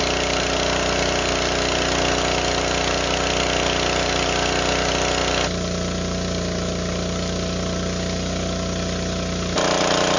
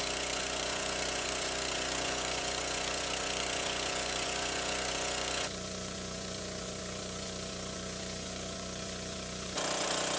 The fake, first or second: second